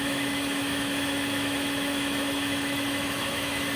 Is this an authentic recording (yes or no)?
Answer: no